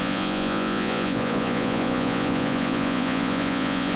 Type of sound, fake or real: fake